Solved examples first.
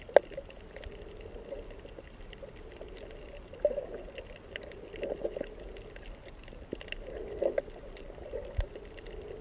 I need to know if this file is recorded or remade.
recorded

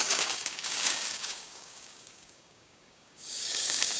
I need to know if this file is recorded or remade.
remade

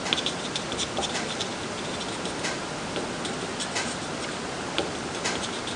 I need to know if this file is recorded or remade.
recorded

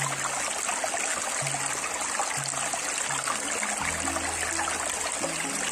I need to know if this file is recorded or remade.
recorded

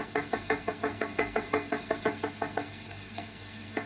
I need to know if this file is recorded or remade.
remade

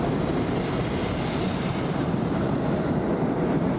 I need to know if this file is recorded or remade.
remade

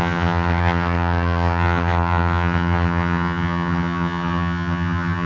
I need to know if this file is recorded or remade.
remade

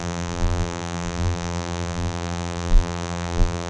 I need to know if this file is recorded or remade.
remade